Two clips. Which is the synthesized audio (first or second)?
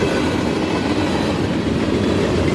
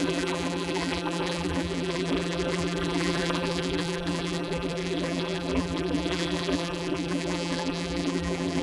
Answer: second